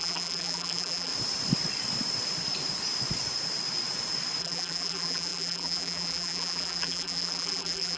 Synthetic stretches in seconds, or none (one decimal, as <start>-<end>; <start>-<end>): 0.0-1.1; 4.4-8.0